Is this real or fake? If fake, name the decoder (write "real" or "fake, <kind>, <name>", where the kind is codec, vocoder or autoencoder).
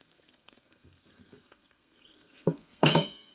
fake, codec, SNAC